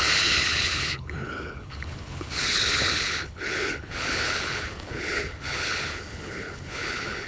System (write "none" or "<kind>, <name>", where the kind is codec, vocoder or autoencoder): codec, HILCodec